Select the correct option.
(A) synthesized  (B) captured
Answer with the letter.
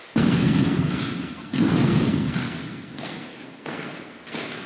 A